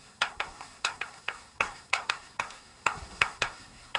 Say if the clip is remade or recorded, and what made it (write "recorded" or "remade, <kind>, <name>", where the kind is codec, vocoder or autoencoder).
remade, codec, SNAC